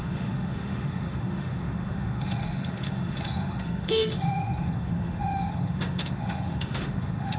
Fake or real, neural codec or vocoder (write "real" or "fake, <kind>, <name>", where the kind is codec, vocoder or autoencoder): fake, autoencoder, DAC-VAE